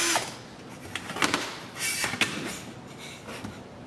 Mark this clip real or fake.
real